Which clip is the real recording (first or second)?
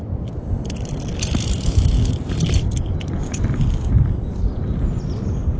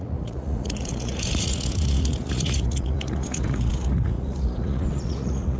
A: first